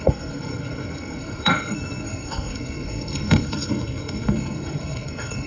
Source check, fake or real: fake